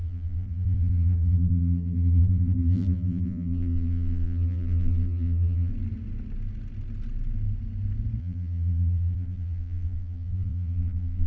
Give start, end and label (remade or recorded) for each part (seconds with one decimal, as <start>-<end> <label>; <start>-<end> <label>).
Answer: 0.0-5.7 remade; 5.7-8.2 recorded; 8.2-11.3 remade